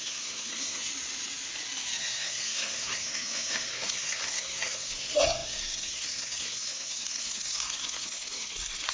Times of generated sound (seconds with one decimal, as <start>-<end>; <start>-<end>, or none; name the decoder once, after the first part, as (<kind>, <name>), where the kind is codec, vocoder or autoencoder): 0.0-0.9 (codec, SNAC); 2.0-8.9

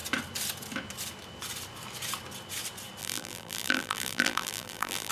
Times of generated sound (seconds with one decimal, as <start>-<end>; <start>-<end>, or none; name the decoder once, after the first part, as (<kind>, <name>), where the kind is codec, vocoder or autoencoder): 3.0-5.1 (vocoder, BigVGAN v2)